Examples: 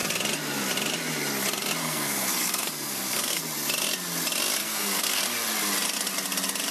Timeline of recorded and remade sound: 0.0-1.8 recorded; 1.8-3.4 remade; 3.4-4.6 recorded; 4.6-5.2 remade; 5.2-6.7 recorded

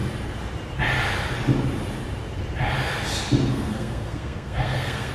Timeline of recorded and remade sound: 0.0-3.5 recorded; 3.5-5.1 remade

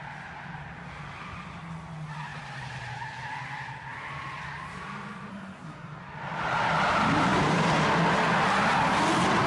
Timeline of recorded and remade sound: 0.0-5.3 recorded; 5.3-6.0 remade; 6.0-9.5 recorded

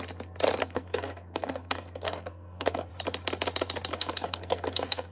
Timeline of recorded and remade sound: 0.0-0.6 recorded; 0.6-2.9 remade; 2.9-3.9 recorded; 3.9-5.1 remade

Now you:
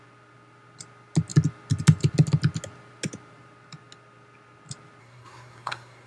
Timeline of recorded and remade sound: 0.0-5.0 recorded; 5.0-6.1 remade

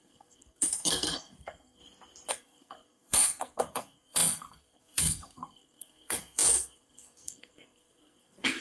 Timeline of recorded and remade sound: 0.0-1.8 remade; 1.8-2.3 recorded; 2.3-8.6 remade